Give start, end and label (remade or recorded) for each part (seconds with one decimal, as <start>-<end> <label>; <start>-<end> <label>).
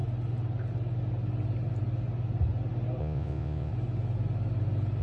0.0-3.0 recorded; 3.0-3.7 remade; 3.7-5.0 recorded